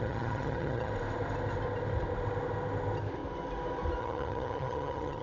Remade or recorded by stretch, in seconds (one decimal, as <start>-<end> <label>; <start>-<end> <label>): 0.0-0.9 remade; 0.9-4.0 recorded; 4.0-5.2 remade